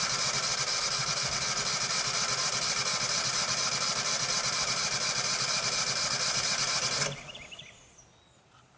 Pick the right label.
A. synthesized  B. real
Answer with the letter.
B